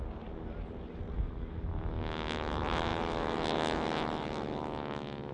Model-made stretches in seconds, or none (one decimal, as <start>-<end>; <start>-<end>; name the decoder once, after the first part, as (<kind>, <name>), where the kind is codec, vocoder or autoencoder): none